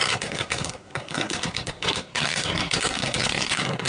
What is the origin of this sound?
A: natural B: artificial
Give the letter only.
B